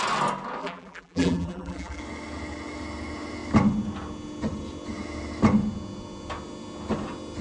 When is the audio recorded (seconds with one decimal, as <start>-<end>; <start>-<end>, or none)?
0.0-0.6; 2.0-7.4